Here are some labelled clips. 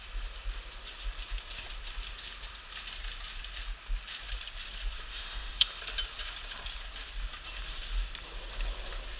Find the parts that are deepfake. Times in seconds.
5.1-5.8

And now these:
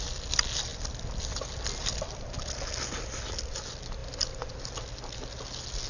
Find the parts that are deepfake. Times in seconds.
none